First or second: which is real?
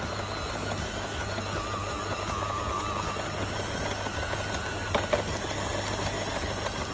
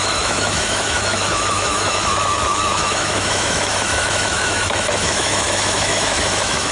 first